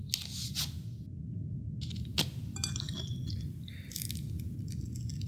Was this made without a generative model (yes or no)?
yes